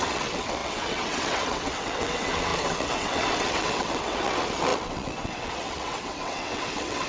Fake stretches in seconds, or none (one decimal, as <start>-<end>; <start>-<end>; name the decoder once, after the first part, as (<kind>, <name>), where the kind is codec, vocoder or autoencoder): 0.0-7.1 (vocoder, WaveNeXt)